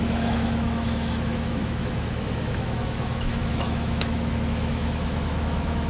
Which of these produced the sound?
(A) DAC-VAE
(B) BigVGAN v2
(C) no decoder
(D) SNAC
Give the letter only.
A